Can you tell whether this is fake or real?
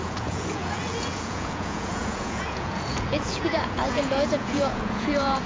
fake